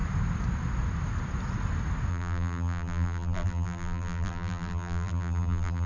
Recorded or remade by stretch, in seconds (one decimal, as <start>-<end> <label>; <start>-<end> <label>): 0.0-2.1 recorded; 2.1-5.9 remade